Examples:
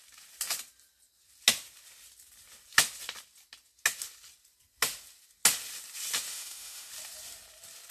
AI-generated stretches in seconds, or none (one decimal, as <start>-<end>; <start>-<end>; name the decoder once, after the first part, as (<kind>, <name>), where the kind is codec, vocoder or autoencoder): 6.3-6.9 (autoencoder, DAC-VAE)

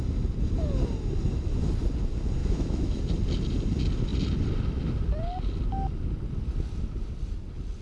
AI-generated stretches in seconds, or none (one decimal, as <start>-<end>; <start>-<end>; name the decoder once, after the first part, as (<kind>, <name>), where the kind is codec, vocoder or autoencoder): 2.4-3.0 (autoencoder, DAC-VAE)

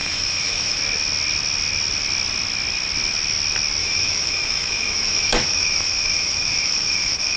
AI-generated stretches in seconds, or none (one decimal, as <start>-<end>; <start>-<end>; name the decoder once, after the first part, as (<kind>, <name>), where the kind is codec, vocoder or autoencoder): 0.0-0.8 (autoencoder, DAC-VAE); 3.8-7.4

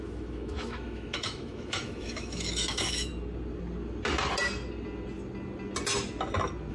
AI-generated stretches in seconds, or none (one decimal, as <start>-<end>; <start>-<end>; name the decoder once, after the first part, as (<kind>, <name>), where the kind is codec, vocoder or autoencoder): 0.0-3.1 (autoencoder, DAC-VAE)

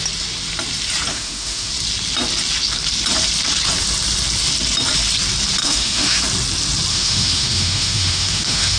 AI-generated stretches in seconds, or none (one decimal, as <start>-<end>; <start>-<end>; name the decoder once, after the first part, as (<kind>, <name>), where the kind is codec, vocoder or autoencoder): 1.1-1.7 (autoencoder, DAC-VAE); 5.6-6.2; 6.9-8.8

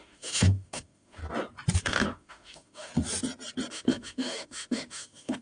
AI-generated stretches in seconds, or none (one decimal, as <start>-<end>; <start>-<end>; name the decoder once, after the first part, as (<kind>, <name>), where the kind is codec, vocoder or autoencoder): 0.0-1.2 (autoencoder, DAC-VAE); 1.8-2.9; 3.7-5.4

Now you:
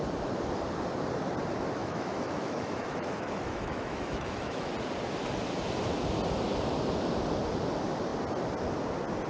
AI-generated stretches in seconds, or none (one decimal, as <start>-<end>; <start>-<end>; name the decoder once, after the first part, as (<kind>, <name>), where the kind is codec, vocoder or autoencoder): 1.8-4.7 (autoencoder, DAC-VAE)